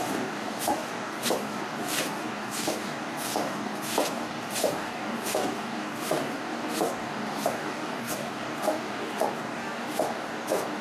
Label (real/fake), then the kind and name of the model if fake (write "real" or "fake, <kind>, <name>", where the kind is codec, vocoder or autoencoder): fake, codec, DAC